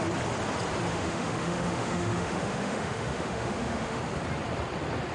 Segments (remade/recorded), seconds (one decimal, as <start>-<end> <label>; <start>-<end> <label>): 0.0-0.9 recorded; 0.9-4.0 remade; 4.0-5.1 recorded